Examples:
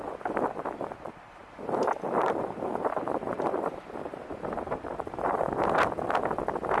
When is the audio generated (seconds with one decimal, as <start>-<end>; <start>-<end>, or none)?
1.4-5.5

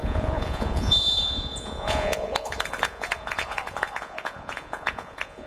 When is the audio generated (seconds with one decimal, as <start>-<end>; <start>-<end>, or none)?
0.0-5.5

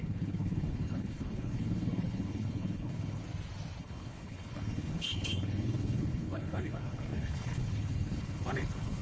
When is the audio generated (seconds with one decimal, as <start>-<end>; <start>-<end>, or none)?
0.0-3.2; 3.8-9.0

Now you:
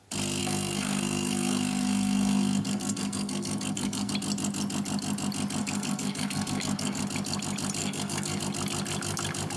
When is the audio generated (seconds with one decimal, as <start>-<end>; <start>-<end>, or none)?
0.4-4.1; 5.6-7.0; 7.8-8.4

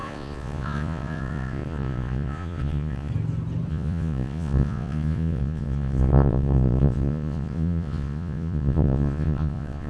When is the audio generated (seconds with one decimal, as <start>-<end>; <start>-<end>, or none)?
0.0-3.1; 3.7-9.9

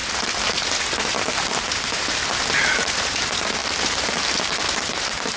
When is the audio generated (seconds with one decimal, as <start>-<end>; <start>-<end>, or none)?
none

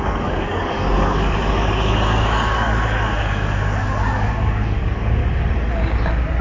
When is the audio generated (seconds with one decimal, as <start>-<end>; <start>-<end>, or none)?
0.0-5.2

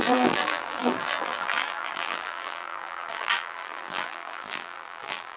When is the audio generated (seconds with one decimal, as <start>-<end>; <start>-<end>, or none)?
0.0-5.4